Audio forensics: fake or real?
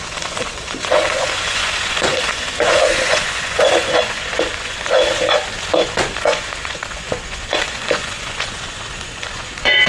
fake